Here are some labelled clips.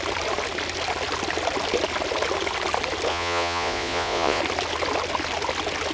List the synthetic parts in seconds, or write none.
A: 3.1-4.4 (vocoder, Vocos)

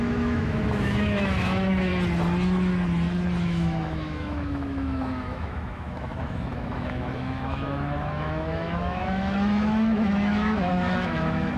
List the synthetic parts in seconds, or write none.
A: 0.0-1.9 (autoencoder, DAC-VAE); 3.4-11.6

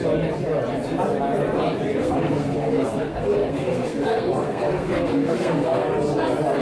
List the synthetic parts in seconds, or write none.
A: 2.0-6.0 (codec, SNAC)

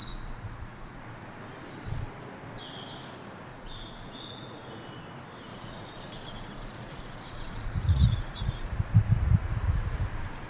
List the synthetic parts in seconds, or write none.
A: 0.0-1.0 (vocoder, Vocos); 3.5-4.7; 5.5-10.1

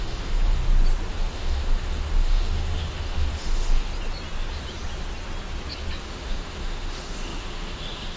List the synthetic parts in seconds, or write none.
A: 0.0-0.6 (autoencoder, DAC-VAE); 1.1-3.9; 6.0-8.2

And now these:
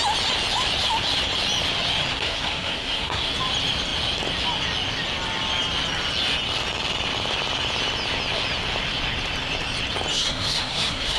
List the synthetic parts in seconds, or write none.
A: 2.1-3.3 (codec, SNAC); 10.1-11.2

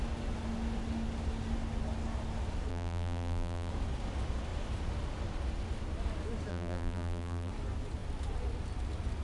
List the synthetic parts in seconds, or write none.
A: 2.7-3.7 (vocoder, BigVGAN v2); 6.5-7.5